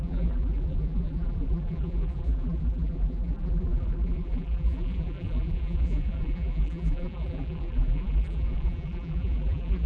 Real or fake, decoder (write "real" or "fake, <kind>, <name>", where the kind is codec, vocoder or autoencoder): fake, vocoder, BigVGAN v2